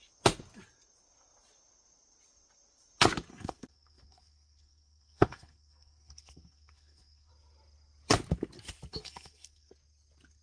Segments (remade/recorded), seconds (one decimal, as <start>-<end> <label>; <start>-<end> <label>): 0.0-3.3 recorded; 3.3-7.3 remade; 7.3-8.9 recorded; 8.9-9.7 remade; 9.7-10.4 recorded